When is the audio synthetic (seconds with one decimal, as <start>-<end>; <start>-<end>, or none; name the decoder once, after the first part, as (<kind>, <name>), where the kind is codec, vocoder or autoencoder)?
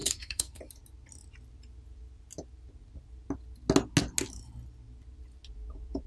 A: 0.0-0.6 (codec, SNAC)